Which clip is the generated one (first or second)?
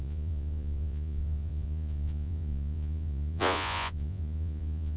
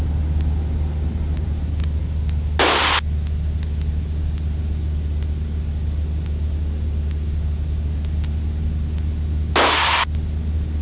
first